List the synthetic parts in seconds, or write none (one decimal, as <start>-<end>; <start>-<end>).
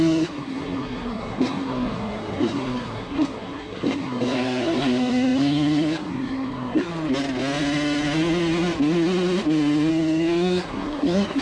0.0-6.9; 9.9-11.4